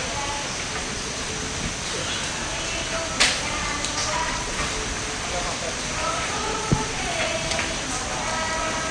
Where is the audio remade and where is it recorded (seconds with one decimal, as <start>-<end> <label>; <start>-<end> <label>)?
0.0-0.8 recorded; 0.8-1.3 remade; 1.3-4.0 recorded; 4.0-4.7 remade; 4.7-6.0 recorded; 6.0-7.4 remade; 7.4-8.9 recorded